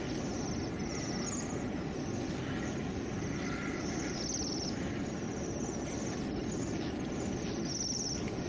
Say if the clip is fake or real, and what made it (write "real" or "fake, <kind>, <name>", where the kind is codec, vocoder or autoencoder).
real